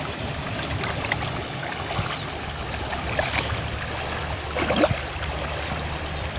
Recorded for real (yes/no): yes